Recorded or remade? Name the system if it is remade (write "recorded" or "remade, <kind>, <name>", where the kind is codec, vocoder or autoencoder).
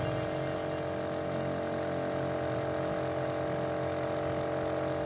recorded